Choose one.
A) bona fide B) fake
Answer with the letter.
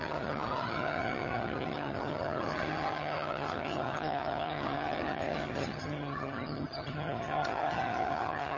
B